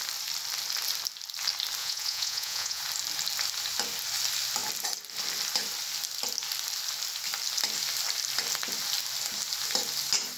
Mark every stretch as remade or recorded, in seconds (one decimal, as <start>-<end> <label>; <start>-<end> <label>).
0.0-1.8 recorded; 1.8-2.8 remade; 2.8-10.4 recorded